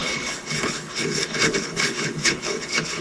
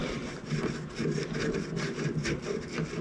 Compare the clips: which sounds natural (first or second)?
second